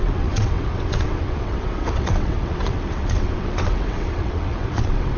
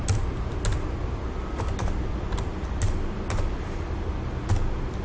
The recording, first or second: second